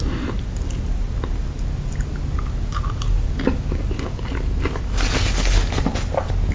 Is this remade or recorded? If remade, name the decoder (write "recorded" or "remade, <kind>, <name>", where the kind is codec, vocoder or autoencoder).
recorded